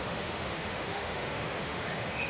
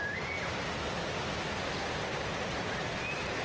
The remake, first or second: first